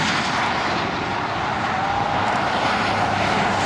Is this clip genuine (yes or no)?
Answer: yes